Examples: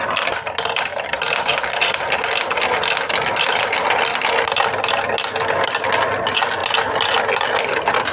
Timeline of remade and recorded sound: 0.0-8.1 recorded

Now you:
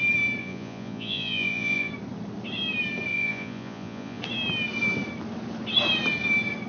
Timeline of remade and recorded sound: 0.0-0.4 recorded; 0.4-1.9 remade; 1.9-3.1 recorded; 3.1-4.2 remade; 4.2-6.7 recorded